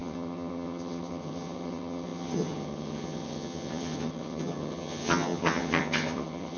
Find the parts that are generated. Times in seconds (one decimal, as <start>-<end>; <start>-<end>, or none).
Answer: 0.0-6.6